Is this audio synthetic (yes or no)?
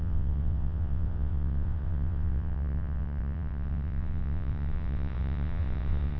yes